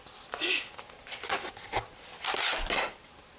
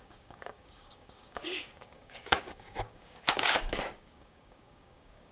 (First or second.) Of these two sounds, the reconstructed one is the second